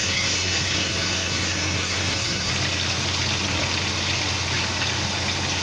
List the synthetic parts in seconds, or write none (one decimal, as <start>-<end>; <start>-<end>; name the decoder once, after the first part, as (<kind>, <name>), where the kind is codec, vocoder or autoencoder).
0.0-2.5 (codec, SNAC)